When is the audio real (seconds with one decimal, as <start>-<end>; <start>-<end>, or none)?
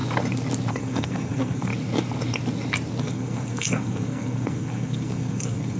0.0-0.7; 1.7-3.0